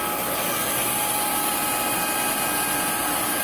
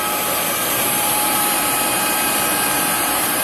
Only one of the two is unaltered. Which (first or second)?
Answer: first